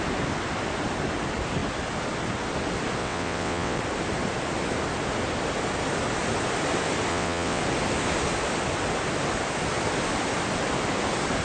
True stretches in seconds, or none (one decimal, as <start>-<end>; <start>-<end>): 0.0-3.0; 3.8-7.1; 7.6-11.4